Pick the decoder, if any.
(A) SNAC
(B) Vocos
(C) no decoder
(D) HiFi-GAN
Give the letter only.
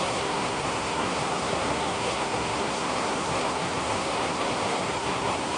A